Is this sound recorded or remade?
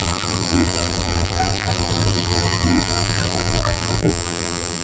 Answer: remade